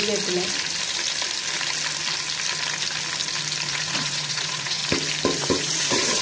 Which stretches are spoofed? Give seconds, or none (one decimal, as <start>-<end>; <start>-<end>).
3.7-4.8; 5.4-6.2